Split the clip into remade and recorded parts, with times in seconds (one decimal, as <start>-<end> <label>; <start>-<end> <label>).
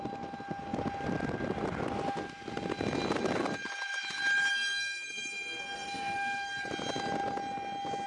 0.0-4.5 recorded; 4.5-6.6 remade; 6.6-8.1 recorded